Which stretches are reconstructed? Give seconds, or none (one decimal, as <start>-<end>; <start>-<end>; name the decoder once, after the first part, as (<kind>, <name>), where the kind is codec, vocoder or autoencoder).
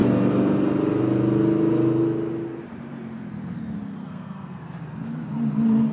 4.0-4.6 (codec, SNAC)